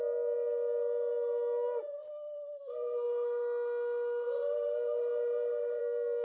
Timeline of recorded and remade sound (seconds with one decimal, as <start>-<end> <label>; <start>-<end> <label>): 0.0-2.1 recorded; 2.1-5.8 remade; 5.8-6.2 recorded

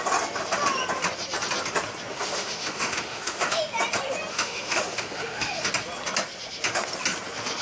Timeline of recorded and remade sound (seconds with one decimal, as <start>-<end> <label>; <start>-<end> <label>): 0.0-2.1 recorded; 2.1-3.6 remade; 3.6-4.3 recorded; 4.3-5.7 remade; 5.7-7.6 recorded